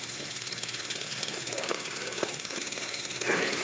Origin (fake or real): fake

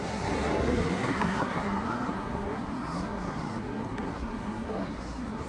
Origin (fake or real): fake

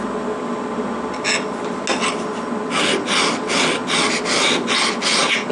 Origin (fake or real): real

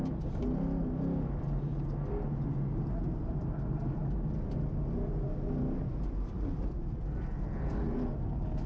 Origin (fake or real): real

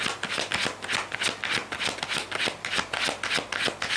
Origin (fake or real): real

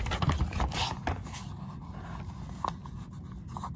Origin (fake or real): real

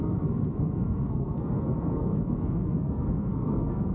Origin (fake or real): fake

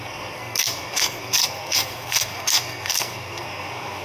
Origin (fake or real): fake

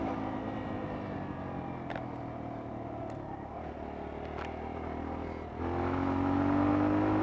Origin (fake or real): real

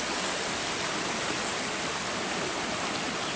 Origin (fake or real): real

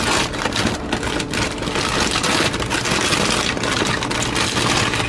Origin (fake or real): real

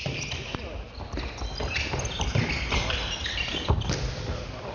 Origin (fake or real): real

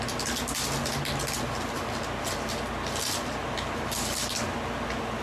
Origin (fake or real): real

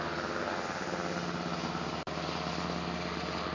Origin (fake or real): real